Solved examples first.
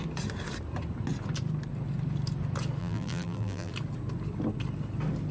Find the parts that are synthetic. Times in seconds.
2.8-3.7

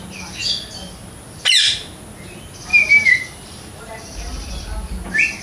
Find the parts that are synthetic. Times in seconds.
2.7-3.6

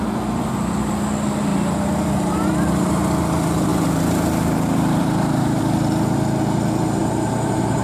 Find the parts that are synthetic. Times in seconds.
1.5-3.1; 3.7-5.6; 7.0-7.8

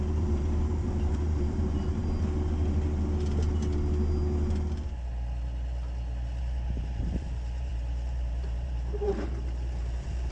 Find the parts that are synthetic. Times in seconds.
0.0-2.0; 6.4-10.3

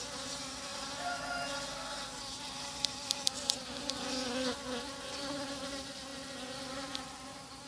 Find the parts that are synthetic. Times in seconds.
3.6-5.2; 6.1-6.7

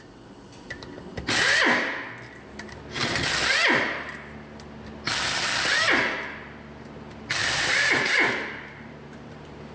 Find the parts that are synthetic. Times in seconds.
7.4-9.7

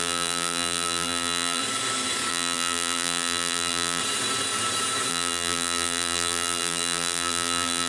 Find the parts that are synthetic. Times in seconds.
0.0-1.6; 2.3-4.0; 5.1-7.9